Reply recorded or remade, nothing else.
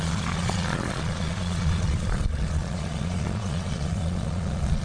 remade